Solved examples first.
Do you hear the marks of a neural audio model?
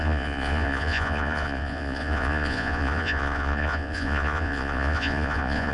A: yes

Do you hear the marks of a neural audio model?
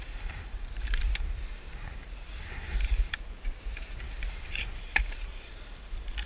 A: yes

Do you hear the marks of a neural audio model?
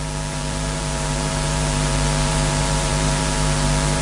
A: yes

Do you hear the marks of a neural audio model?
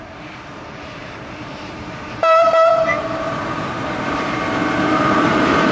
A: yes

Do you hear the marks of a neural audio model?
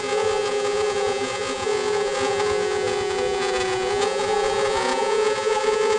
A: yes